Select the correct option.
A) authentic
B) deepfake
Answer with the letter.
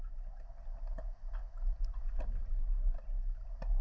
A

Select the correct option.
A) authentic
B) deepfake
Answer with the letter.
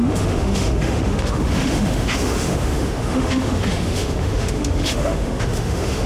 B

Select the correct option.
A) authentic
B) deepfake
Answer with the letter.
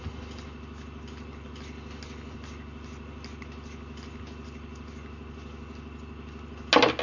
A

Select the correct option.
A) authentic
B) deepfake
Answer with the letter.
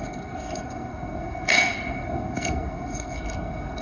B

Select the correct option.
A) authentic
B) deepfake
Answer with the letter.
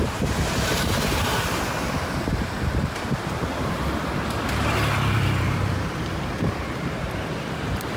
B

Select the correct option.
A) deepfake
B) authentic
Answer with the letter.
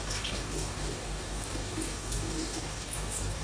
A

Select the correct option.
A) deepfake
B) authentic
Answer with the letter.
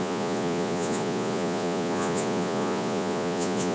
A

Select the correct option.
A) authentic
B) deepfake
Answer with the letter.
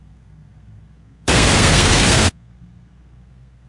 B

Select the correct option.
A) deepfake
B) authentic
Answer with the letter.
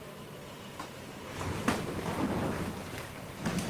B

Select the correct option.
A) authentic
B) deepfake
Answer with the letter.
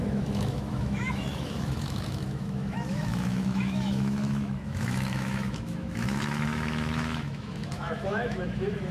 B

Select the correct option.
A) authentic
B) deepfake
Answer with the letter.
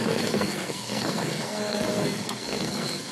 B